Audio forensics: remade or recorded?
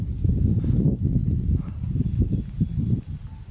recorded